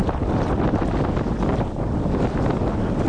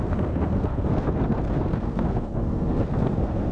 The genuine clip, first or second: first